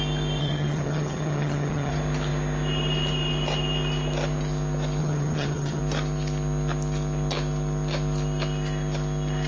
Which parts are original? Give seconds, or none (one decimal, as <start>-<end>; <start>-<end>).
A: 0.0-0.4; 1.9-5.0; 5.8-9.5